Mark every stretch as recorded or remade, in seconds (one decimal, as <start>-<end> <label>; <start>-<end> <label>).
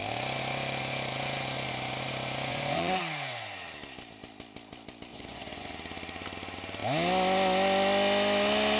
0.0-2.5 recorded; 2.5-3.0 remade; 3.0-5.1 recorded; 5.1-5.7 remade; 5.7-8.8 recorded